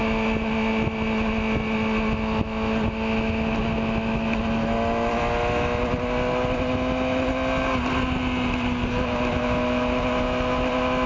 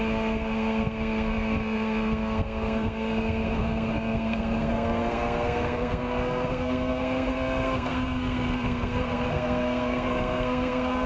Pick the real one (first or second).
first